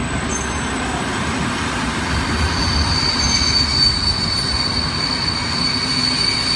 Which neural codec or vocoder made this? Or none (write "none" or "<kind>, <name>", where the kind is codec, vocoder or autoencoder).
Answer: none